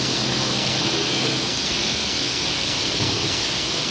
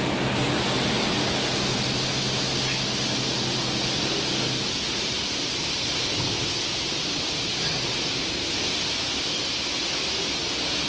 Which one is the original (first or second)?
second